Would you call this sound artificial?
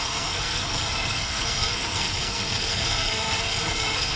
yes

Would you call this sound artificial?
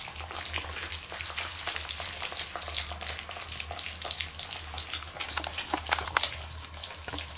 no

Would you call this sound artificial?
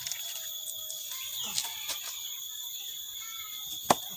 no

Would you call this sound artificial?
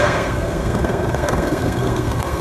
yes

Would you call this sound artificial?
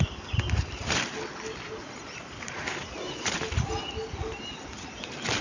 no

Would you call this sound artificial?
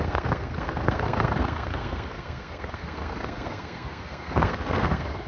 yes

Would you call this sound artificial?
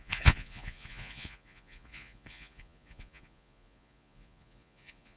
yes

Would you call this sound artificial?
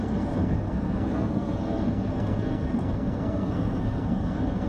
yes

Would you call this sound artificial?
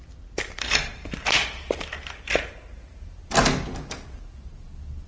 no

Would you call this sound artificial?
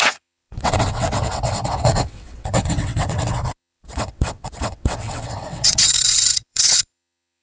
yes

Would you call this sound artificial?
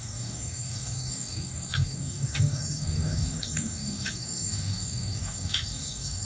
yes